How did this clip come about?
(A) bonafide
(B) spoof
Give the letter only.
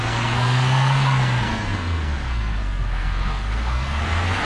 B